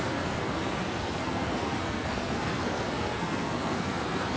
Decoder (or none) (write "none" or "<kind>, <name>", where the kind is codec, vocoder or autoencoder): codec, SNAC